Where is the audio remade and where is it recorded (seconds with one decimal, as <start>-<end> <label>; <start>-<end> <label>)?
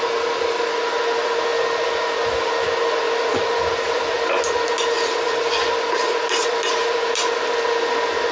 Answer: 0.0-8.3 recorded